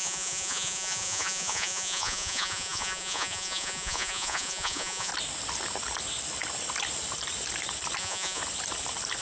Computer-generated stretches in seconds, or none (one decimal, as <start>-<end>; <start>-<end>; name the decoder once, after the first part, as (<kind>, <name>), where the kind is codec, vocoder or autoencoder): 0.0-5.1 (vocoder, Vocos); 8.0-8.4

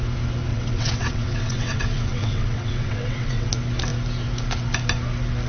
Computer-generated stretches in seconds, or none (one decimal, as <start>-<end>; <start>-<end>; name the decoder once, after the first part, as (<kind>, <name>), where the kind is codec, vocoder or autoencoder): 0.5-3.5 (vocoder, WaveNeXt)

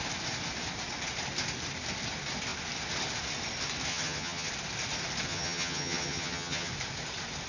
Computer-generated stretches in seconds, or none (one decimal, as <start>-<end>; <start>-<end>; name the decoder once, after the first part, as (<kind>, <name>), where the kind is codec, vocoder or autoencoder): 3.9-4.5 (vocoder, HiFi-GAN); 5.3-6.7

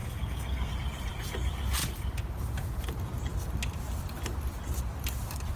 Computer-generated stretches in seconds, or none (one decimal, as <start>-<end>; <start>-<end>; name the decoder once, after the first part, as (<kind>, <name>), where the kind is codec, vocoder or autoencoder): 0.0-0.7 (codec, SNAC)

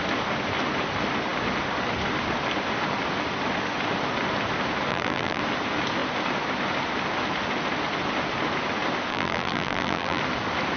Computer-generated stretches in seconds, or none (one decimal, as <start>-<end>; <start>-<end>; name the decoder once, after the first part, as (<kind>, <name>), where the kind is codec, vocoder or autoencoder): 4.9-5.4 (vocoder, BigVGAN v2); 9.1-10.2

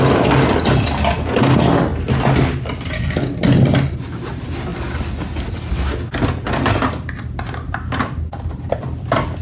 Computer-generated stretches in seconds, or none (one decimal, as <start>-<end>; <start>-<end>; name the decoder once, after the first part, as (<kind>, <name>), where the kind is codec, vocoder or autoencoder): none

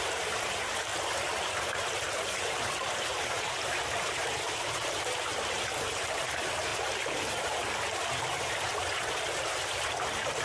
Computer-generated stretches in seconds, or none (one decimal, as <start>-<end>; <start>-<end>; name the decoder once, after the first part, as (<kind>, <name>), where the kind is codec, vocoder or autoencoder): 0.0-6.7 (vocoder, BigVGAN v2); 9.4-10.4

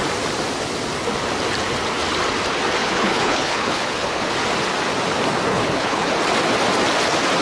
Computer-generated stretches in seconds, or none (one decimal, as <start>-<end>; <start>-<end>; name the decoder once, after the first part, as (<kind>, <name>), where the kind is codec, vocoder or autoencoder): 2.8-4.3 (codec, HILCodec); 5.5-6.1